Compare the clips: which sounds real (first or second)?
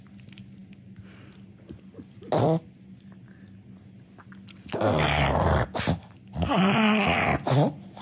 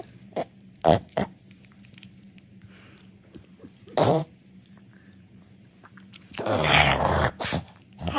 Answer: first